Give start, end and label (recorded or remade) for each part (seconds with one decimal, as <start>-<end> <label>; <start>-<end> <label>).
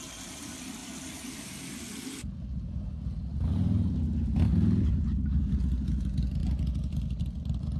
0.0-6.4 recorded; 6.4-7.2 remade; 7.2-7.8 recorded